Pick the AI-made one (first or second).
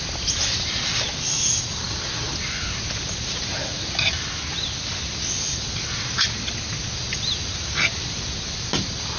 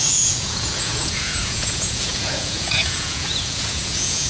second